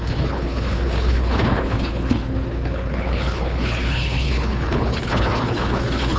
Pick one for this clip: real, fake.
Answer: fake